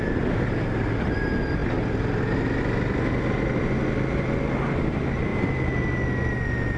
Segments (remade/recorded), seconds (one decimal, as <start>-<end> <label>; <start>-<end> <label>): 0.0-6.8 recorded